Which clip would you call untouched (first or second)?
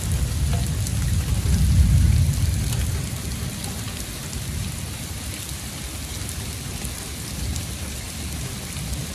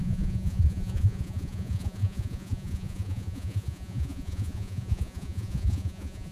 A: first